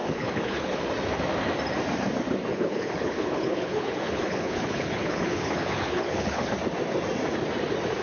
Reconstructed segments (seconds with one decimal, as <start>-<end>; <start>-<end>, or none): 0.0-0.8; 2.5-6.5